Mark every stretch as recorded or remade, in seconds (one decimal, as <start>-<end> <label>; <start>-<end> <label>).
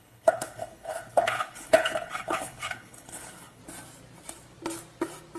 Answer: 0.0-3.6 remade; 3.6-5.4 recorded